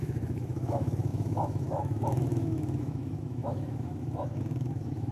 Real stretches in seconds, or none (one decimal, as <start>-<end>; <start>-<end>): none